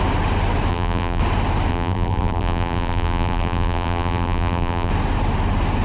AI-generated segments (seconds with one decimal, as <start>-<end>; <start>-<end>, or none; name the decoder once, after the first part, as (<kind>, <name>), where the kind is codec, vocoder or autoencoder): 0.7-1.2 (vocoder, BigVGAN v2); 1.7-4.9